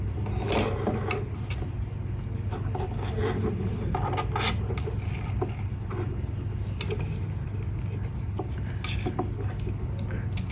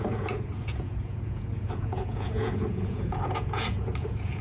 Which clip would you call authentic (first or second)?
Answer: first